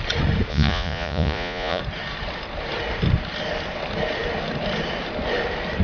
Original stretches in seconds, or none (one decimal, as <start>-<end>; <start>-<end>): 0.0-0.5; 1.8-5.8